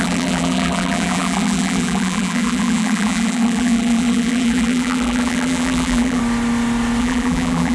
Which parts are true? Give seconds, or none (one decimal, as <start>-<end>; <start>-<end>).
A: 6.2-7.0